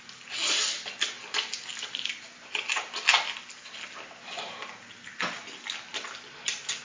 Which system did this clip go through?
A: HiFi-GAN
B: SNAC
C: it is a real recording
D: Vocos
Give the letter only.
C